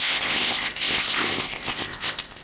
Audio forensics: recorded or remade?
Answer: remade